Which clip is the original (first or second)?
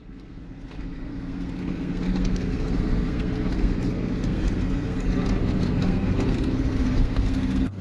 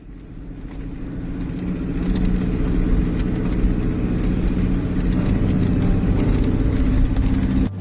second